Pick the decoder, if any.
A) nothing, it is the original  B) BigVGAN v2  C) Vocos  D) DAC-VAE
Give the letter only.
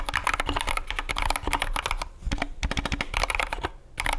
A